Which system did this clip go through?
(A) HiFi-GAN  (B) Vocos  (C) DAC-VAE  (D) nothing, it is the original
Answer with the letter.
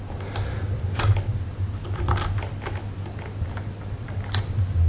D